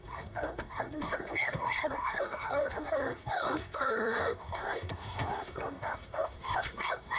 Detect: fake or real fake